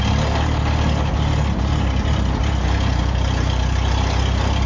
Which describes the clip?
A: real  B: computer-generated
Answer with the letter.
A